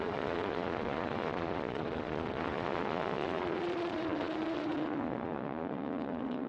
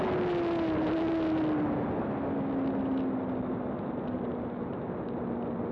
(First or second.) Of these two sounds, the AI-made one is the first